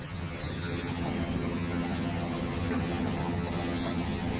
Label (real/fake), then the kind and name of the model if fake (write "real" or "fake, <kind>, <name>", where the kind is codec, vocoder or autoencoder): fake, vocoder, HiFi-GAN